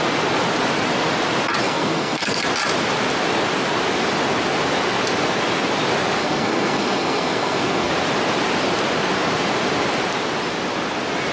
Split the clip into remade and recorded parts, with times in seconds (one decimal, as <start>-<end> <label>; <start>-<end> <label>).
0.0-1.6 recorded; 1.6-2.4 remade; 2.4-6.2 recorded; 6.2-7.9 remade; 7.9-11.3 recorded